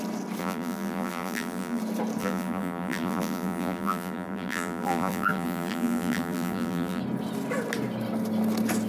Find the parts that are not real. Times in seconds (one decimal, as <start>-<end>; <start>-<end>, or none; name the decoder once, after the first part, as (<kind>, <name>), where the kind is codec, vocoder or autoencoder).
0.4-1.8 (vocoder, BigVGAN v2); 2.2-7.0